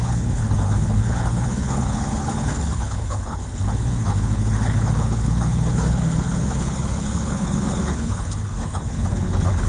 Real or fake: fake